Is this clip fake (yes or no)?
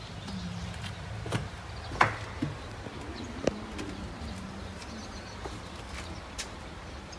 no